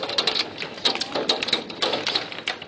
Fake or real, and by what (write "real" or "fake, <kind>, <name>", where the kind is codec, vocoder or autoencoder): real